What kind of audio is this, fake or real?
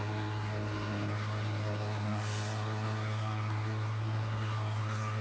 fake